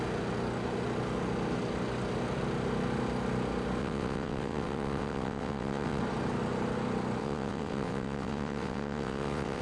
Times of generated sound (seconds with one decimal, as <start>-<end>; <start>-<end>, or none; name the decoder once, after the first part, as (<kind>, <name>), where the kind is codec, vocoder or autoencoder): 3.8-6.0 (vocoder, WaveNeXt); 7.2-9.6

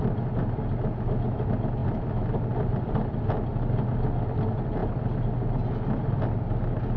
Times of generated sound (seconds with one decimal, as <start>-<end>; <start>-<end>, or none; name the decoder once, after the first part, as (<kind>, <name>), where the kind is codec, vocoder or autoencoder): 1.8-3.2 (vocoder, BigVGAN v2)

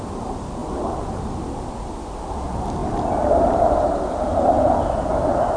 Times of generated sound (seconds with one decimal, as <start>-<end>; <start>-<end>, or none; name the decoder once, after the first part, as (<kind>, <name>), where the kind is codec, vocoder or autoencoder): none

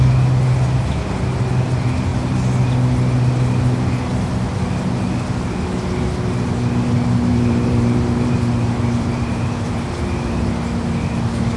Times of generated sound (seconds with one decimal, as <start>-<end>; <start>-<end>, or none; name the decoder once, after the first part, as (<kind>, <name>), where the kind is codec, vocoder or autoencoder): 7.3-9.7 (vocoder, BigVGAN v2)